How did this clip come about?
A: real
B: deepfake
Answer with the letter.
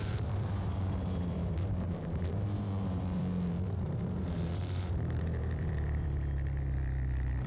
B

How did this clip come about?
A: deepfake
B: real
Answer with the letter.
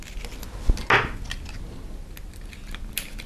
B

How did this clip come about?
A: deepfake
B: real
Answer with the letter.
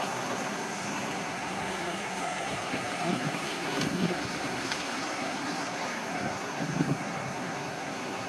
A